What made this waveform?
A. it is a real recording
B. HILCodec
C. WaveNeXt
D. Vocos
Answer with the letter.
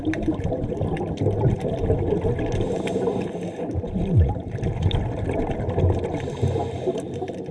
A